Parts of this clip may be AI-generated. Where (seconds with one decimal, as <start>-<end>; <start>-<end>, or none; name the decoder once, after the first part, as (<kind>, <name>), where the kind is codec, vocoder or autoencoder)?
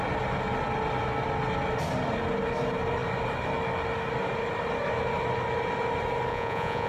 6.3-6.9 (vocoder, Vocos)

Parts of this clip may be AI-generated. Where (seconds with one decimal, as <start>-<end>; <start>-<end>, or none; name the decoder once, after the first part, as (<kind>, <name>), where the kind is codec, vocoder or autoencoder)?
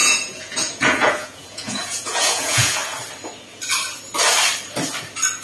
0.0-2.8 (vocoder, Vocos)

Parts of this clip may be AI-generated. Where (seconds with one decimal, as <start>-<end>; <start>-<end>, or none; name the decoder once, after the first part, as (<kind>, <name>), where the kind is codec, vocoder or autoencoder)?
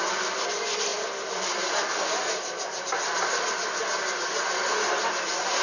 0.9-4.3 (vocoder, BigVGAN v2)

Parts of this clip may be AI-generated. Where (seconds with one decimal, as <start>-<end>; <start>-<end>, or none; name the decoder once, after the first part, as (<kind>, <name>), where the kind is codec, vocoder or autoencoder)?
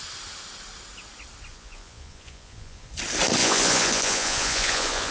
1.5-2.9 (vocoder, Vocos); 3.4-5.1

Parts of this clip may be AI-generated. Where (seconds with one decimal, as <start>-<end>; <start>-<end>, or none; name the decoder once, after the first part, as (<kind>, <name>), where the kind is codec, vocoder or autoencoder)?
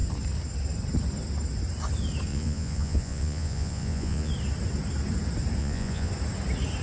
2.3-4.3 (vocoder, Vocos); 5.6-6.1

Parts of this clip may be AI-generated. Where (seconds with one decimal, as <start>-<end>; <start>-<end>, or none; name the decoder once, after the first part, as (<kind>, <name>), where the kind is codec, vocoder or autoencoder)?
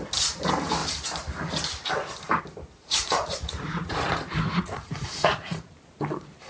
2.8-5.7 (vocoder, Vocos)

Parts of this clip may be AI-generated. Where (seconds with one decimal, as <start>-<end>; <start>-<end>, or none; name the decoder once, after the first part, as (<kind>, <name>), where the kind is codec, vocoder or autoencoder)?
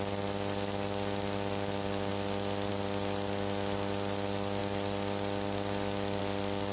2.1-2.7 (vocoder, BigVGAN v2); 4.6-6.2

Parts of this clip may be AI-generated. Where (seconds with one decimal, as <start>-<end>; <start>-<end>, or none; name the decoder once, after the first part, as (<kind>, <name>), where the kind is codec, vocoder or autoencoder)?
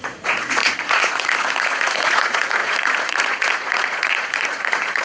0.0-5.0 (vocoder, Vocos)